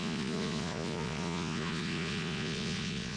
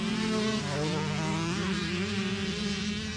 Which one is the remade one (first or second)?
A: first